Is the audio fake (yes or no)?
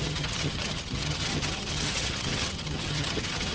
yes